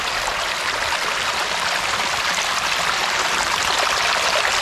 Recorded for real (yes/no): yes